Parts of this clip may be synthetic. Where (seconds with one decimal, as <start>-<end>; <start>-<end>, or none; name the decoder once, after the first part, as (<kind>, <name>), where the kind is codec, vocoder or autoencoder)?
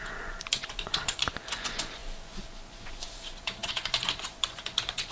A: 0.0-5.1 (vocoder, Vocos)